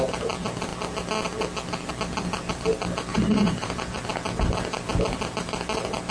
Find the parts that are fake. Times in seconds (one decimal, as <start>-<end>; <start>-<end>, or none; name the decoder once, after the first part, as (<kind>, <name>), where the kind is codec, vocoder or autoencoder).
3.1-4.0 (vocoder, BigVGAN v2)